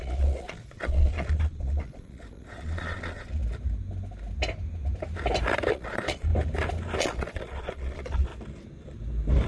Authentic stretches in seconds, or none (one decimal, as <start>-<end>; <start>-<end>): 3.4-5.7; 6.3-7.0; 8.3-9.5